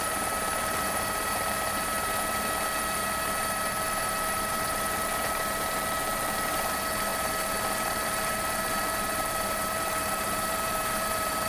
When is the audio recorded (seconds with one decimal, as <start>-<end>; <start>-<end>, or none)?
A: none